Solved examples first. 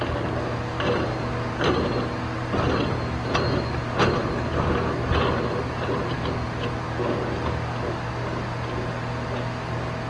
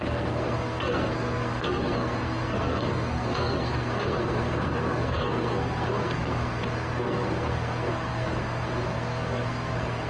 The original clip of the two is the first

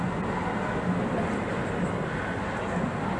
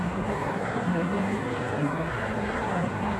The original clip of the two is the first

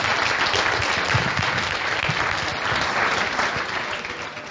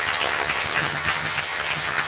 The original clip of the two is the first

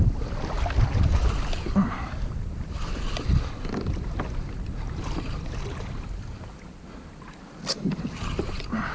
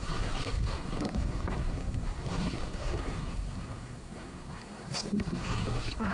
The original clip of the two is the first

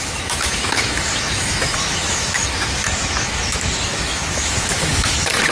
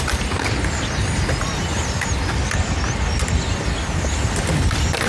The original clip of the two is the second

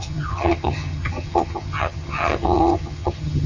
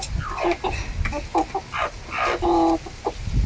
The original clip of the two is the second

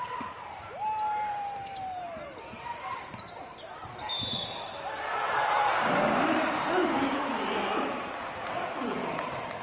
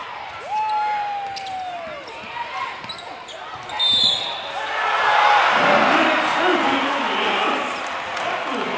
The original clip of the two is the second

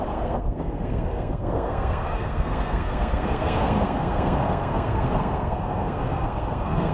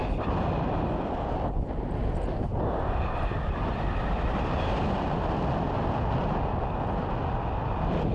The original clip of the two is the second